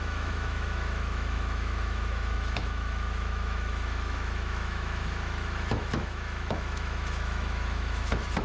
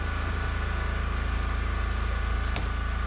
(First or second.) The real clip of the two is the second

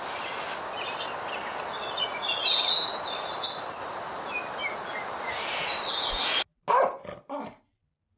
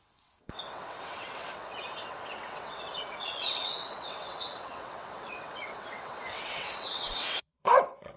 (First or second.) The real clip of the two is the first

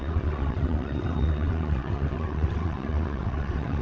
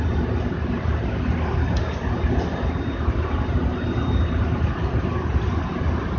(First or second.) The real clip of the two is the second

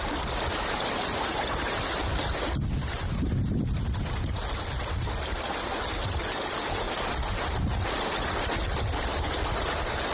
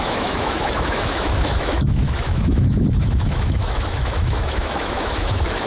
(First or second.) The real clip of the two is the first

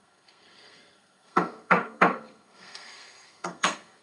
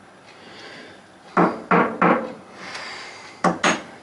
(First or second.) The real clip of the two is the second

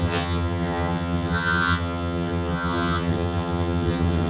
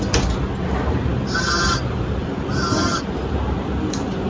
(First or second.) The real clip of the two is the second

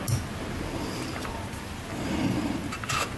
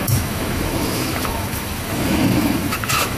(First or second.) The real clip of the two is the first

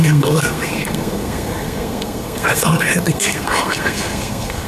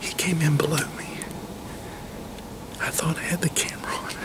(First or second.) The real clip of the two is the second